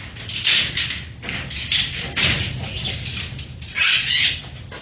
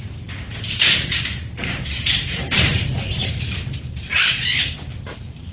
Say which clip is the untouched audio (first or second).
first